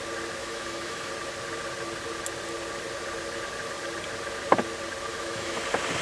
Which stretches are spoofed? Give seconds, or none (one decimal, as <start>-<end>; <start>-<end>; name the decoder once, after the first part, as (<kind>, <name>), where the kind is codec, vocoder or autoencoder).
0.4-1.1 (autoencoder, DAC-VAE); 5.1-5.6